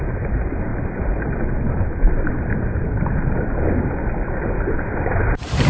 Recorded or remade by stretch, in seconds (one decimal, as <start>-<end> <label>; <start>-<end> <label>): 0.0-5.7 recorded